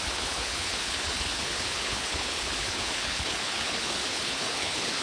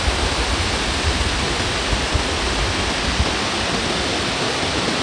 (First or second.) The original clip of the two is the second